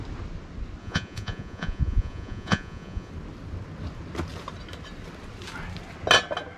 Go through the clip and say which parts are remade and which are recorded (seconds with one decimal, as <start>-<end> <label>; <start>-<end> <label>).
0.0-0.8 recorded; 0.8-3.1 remade; 3.1-6.6 recorded